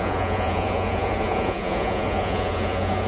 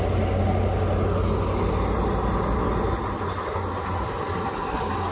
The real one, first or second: second